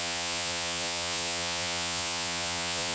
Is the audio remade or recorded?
remade